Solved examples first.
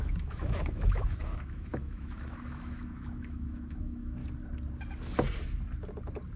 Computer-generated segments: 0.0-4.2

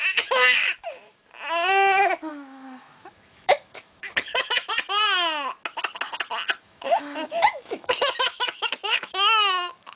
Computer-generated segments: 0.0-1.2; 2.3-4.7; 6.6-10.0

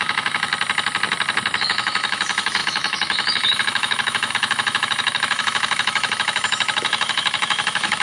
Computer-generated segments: 0.0-0.5; 1.6-8.0

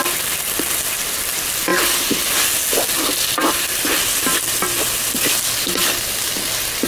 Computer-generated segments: none